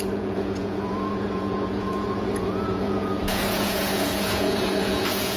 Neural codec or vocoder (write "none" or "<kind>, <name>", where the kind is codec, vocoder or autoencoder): vocoder, Vocos